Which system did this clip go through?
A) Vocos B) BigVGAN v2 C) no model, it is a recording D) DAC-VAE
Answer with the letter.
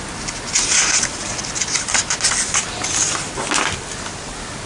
C